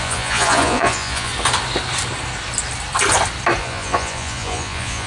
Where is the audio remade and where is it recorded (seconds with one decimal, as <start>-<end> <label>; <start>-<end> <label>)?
0.0-1.3 remade; 1.3-3.6 recorded; 3.6-5.1 remade